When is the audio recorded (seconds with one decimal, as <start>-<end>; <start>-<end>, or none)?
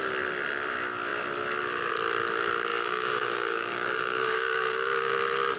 0.0-2.7; 5.1-5.6